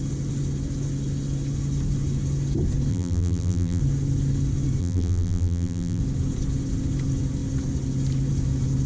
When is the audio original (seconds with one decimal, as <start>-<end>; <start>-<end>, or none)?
0.0-2.9; 3.8-4.8; 6.0-8.9

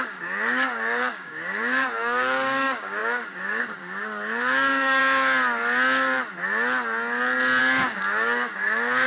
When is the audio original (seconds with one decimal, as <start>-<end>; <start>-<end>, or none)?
5.0-7.6